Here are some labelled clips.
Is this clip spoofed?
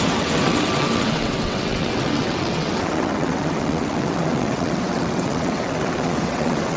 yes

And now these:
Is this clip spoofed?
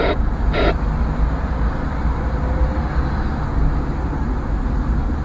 no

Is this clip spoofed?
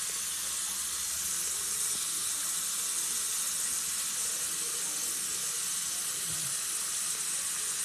no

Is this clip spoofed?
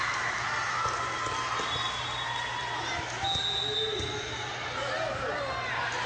no